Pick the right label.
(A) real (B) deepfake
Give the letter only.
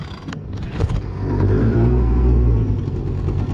B